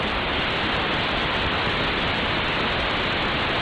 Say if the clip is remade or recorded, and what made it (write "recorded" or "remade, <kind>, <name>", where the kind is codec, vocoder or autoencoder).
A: recorded